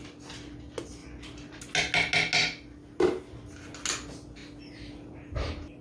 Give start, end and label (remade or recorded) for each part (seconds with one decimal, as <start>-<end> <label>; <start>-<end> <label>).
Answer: 0.0-1.0 recorded; 1.0-1.6 remade; 1.6-5.8 recorded